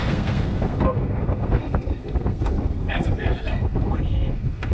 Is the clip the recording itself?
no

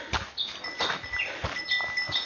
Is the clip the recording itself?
yes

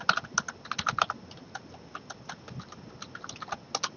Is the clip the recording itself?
yes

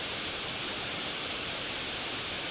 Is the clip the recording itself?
yes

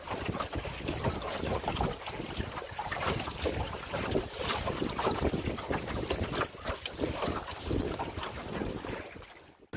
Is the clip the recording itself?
yes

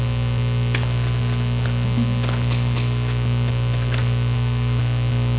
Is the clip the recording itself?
yes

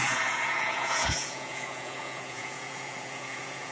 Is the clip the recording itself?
no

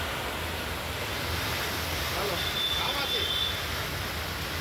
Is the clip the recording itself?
yes